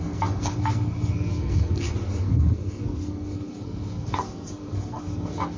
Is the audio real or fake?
fake